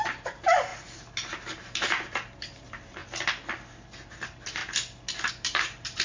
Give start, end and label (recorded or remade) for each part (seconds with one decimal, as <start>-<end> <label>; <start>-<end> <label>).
0.0-0.7 remade; 0.7-1.3 recorded; 1.3-3.0 remade; 3.0-4.1 recorded; 4.1-4.6 remade; 4.6-5.3 recorded; 5.3-6.0 remade